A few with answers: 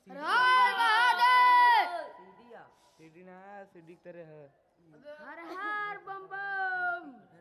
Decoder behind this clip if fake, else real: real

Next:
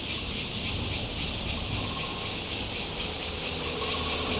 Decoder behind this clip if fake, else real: real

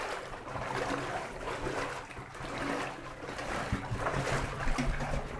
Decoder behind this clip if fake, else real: real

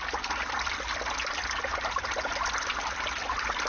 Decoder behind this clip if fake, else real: real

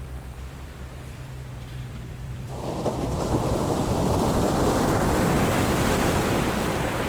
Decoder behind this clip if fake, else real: fake, vocoder, BigVGAN v2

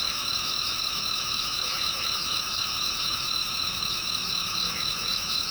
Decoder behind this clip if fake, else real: fake, autoencoder, DAC-VAE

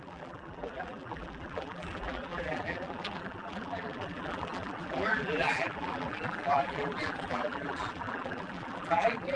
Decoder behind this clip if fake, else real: fake, vocoder, BigVGAN v2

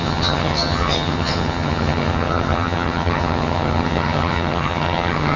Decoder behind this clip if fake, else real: fake, vocoder, HiFi-GAN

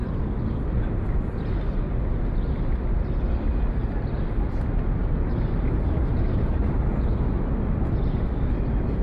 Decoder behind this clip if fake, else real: real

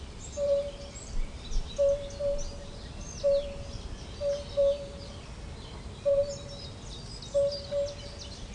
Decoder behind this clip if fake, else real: real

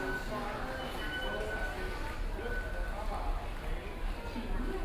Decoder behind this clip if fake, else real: real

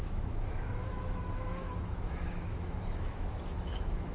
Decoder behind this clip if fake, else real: fake, autoencoder, DAC-VAE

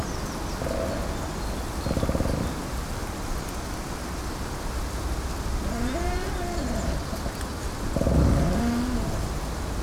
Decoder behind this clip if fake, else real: real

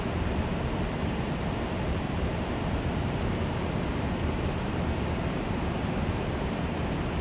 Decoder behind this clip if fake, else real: fake, vocoder, BigVGAN v2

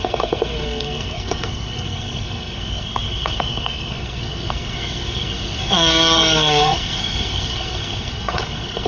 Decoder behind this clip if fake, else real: fake, codec, SNAC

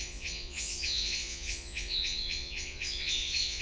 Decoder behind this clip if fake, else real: fake, vocoder, Vocos